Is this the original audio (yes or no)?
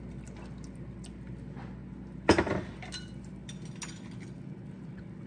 yes